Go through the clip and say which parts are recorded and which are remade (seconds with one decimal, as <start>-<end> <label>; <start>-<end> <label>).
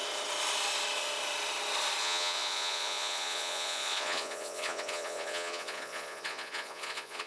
0.0-2.0 recorded; 2.0-7.3 remade